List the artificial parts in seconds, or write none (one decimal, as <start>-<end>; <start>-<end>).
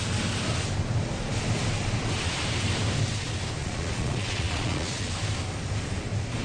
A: 3.6-5.1